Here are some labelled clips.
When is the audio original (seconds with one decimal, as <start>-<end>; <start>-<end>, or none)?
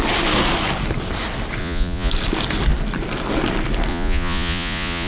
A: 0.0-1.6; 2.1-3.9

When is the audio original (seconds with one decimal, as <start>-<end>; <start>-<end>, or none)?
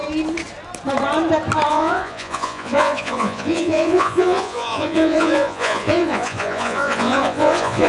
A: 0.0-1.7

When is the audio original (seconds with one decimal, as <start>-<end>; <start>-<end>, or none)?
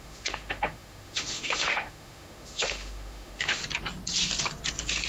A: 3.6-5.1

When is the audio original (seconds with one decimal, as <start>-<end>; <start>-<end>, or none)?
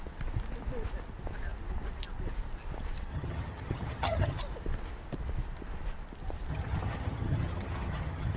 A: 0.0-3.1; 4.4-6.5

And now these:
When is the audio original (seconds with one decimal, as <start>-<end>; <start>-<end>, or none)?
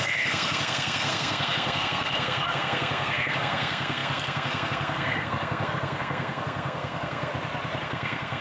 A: 7.3-7.8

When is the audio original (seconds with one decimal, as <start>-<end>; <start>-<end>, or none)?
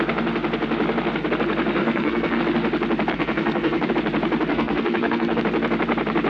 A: 0.0-1.8; 2.4-3.1; 3.9-4.5; 5.4-6.3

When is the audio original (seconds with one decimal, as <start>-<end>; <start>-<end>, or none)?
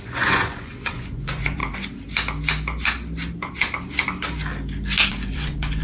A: 1.6-5.1